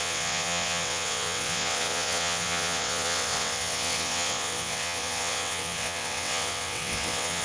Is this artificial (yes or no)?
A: yes